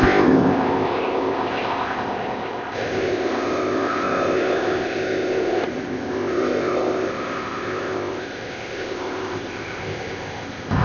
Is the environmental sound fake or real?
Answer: fake